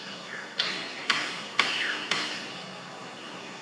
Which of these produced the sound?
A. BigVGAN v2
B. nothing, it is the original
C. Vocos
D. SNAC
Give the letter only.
D